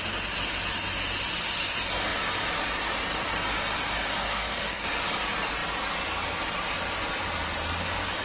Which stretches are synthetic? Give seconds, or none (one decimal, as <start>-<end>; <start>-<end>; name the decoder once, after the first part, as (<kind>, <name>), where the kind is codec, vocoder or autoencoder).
4.2-4.9 (codec, SNAC)